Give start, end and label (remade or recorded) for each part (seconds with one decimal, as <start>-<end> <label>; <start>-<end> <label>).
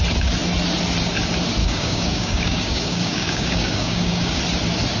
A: 0.0-1.6 recorded; 1.6-4.4 remade; 4.4-5.0 recorded